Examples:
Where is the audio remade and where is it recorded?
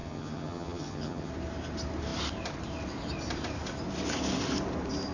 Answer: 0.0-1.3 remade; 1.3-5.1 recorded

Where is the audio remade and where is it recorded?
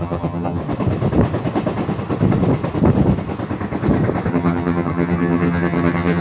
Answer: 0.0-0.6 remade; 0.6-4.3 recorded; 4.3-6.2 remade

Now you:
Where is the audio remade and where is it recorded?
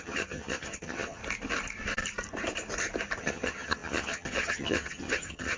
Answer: 0.0-1.2 remade; 1.2-3.2 recorded; 3.2-5.6 remade